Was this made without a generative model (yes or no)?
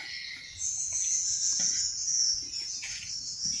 no